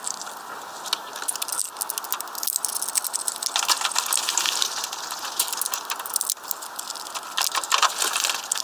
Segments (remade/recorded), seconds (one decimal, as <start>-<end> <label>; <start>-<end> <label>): 0.0-8.6 recorded